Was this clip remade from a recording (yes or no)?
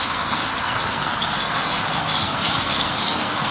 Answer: yes